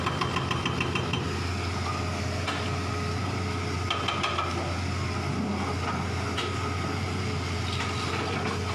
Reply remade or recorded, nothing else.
recorded